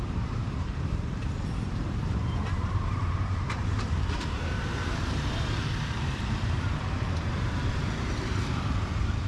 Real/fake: fake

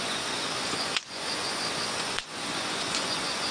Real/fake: fake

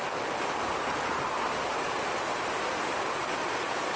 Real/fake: real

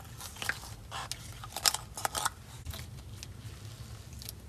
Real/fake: real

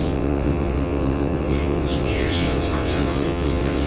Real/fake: fake